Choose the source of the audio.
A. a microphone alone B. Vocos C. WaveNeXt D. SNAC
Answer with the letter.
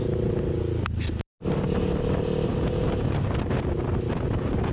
A